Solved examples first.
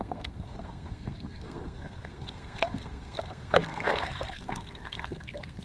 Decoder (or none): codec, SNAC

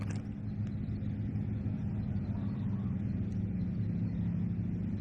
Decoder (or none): none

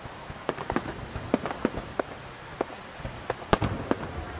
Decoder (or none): none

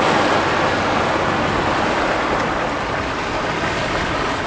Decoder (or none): none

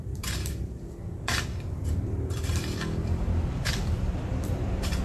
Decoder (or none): vocoder, BigVGAN v2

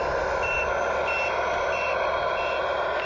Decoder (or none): none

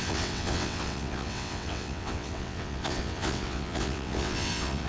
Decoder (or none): vocoder, WaveNeXt